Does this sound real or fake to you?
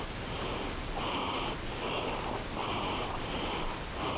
real